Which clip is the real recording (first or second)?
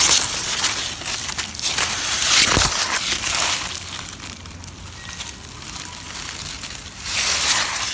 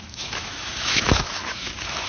first